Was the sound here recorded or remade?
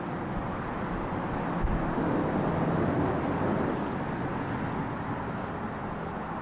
recorded